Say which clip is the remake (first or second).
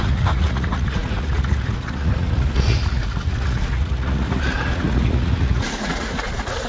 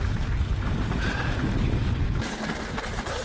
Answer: first